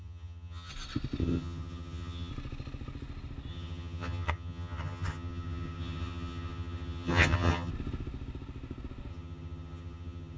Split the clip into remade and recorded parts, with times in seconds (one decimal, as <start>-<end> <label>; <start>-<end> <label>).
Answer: 0.0-0.7 remade; 0.7-1.2 recorded; 1.2-2.3 remade; 2.3-3.5 recorded; 3.5-7.7 remade; 7.7-9.1 recorded; 9.1-10.4 remade